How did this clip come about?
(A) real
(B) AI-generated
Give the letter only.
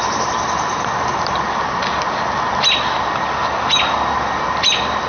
B